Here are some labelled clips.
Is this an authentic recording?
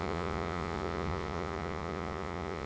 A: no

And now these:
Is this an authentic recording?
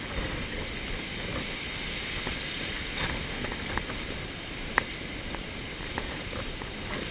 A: yes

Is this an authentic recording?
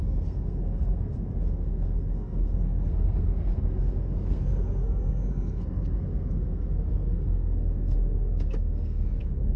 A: no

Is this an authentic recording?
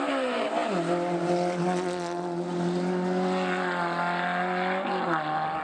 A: yes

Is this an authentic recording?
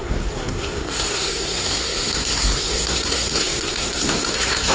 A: no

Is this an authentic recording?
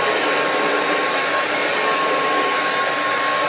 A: yes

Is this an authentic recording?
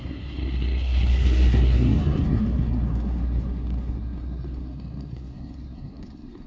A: no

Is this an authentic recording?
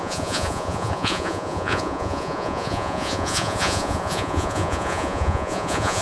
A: no